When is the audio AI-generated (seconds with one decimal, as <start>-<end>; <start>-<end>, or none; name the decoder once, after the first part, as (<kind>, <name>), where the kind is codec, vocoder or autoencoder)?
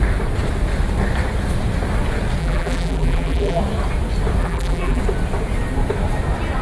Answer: 2.4-3.6 (vocoder, BigVGAN v2); 4.4-5.0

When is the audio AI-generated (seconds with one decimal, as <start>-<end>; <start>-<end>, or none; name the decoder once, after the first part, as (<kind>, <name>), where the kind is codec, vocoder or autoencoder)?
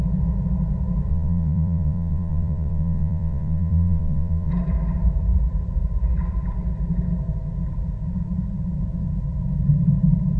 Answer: 1.1-4.5 (vocoder, Vocos)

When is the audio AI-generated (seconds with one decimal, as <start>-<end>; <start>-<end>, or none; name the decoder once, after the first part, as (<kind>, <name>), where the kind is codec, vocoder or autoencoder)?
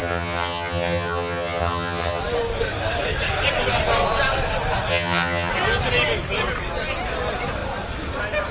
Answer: 0.0-2.2 (vocoder, HiFi-GAN); 4.9-5.5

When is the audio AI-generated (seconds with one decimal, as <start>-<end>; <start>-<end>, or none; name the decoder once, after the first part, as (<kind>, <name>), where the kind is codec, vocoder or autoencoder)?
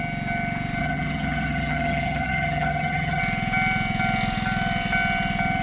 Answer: 0.8-3.2 (vocoder, HiFi-GAN)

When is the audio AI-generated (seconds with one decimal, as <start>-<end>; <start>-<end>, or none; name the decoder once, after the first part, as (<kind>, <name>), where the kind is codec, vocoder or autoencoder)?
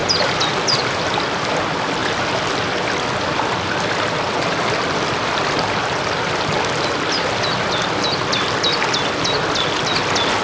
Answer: none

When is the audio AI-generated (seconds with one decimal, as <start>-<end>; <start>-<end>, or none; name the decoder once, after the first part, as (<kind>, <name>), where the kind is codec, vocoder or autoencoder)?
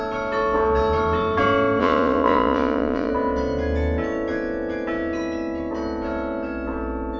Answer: 1.8-3.1 (vocoder, Vocos)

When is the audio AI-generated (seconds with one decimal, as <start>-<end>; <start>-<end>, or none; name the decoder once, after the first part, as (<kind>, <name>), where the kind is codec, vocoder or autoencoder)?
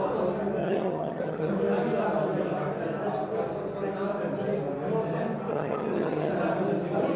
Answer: 0.6-1.5 (vocoder, HiFi-GAN); 5.5-6.3